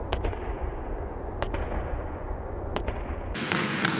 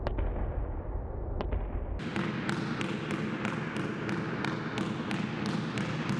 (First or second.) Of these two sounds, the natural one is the second